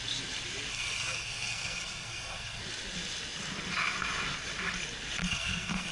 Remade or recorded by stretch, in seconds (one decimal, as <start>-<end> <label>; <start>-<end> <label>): 0.0-0.7 recorded; 0.7-2.6 remade; 2.6-5.2 recorded; 5.2-5.9 remade